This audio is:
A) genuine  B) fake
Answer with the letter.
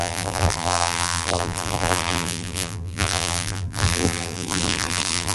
B